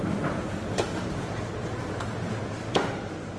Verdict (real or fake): real